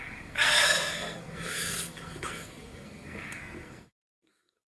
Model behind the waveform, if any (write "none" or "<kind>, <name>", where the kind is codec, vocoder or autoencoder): codec, SNAC